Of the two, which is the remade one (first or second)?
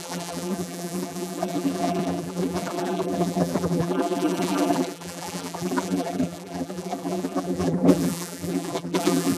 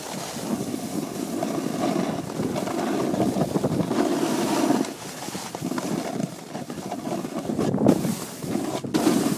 first